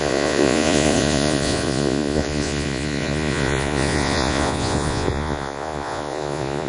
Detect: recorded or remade remade